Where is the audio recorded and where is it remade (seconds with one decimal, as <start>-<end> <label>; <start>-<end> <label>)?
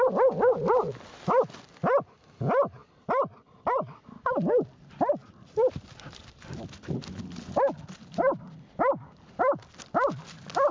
0.0-10.7 recorded